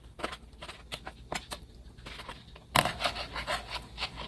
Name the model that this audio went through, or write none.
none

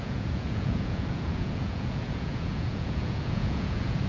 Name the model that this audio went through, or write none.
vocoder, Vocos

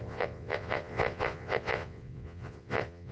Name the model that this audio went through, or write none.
vocoder, Vocos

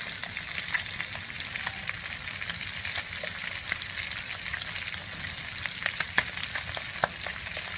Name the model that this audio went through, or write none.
none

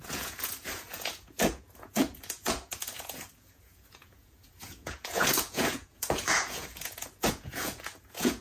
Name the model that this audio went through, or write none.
vocoder, Vocos